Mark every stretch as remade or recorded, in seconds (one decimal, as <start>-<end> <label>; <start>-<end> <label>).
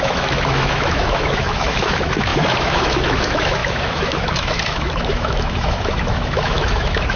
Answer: 0.0-7.2 remade